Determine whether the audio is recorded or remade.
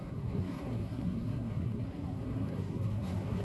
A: remade